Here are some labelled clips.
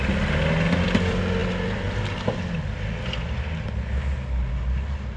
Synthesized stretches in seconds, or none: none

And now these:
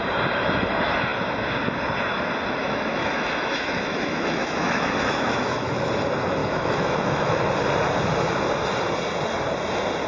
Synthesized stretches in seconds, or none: 2.6-5.9 (autoencoder, DAC-VAE); 6.4-7.4

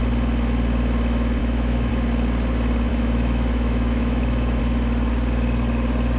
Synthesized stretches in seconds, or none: 1.4-1.9 (autoencoder, DAC-VAE); 2.9-4.6

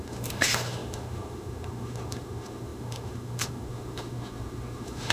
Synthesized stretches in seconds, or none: 0.0-5.1 (autoencoder, DAC-VAE)

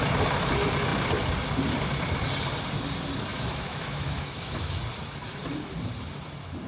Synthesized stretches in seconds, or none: 3.3-4.8 (autoencoder, DAC-VAE)